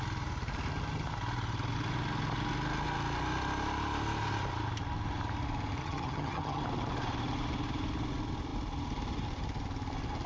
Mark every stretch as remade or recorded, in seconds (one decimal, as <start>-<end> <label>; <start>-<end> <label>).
0.0-5.8 recorded; 5.8-6.6 remade; 6.6-10.3 recorded